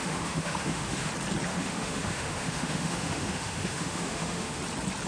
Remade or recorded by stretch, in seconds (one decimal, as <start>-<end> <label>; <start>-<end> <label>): 0.0-1.1 remade; 1.1-1.5 recorded; 1.5-4.6 remade; 4.6-5.1 recorded